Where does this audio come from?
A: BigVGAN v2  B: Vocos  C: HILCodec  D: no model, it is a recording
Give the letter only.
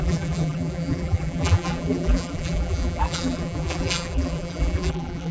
A